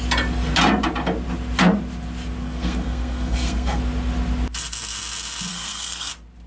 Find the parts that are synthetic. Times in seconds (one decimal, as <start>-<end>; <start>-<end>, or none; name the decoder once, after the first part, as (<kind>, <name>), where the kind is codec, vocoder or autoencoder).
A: 2.4-3.8 (codec, SNAC); 5.5-6.1